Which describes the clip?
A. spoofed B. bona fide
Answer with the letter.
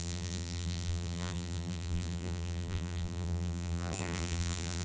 A